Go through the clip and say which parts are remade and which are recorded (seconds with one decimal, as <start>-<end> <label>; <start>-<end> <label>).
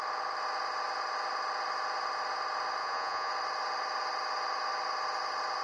0.0-2.8 recorded; 2.8-3.3 remade; 3.3-5.6 recorded